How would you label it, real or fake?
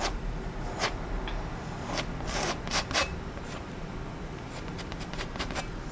fake